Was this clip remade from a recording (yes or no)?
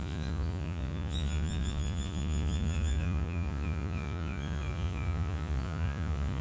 yes